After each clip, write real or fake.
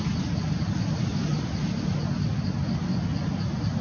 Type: real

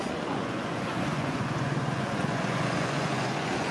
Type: fake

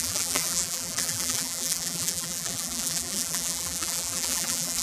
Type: fake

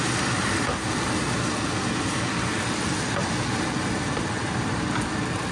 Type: real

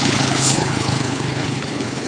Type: fake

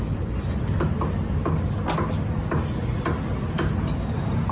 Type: real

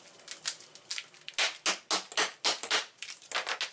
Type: real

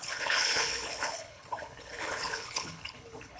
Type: fake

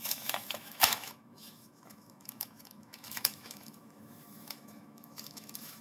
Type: fake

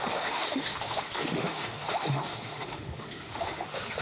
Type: fake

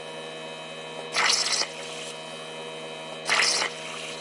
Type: real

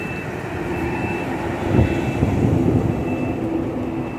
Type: real